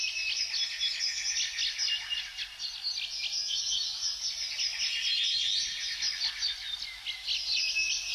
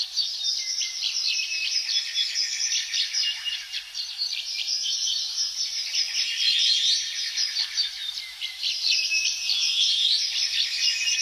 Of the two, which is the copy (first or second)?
second